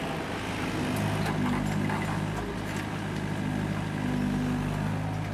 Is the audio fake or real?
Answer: real